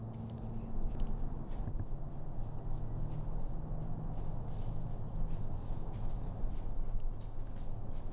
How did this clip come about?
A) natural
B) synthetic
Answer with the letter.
A